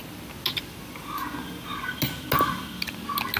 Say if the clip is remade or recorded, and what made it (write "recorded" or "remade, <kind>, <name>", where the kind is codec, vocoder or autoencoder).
recorded